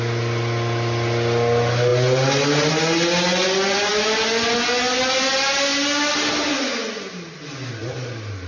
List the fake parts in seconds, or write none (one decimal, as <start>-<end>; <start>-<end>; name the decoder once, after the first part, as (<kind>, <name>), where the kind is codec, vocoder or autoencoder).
none

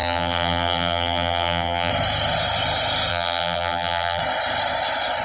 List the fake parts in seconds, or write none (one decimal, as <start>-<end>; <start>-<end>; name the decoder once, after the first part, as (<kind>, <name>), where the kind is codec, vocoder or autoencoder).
0.0-1.9 (vocoder, BigVGAN v2); 3.1-4.2

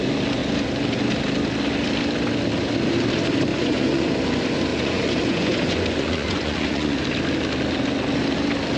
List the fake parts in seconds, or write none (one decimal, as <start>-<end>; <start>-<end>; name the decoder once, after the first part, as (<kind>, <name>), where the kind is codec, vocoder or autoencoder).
3.5-4.1 (vocoder, Vocos); 4.7-7.0

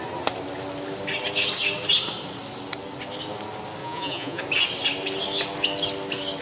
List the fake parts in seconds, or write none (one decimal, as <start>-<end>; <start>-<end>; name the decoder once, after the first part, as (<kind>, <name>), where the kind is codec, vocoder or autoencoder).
3.8-4.4 (vocoder, Vocos)

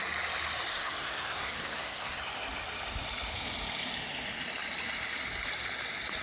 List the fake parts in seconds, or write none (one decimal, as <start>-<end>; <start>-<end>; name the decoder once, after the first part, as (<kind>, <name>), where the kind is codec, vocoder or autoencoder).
0.7-2.2 (codec, SNAC)

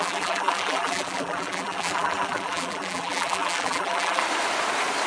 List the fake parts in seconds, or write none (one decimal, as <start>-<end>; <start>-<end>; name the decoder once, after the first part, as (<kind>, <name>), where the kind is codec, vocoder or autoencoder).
0.0-4.2 (vocoder, BigVGAN v2)